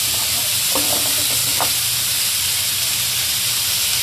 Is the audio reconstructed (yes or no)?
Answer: no